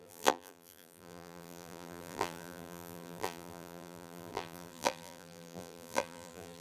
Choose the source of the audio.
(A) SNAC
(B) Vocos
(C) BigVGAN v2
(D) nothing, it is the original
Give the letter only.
C